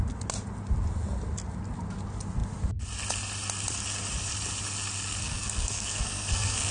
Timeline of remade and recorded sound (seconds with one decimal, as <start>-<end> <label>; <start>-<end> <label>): 0.0-5.2 recorded; 5.2-6.7 remade